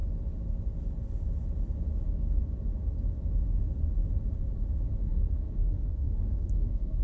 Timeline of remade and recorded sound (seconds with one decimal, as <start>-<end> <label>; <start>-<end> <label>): 0.0-5.0 recorded; 5.0-7.0 remade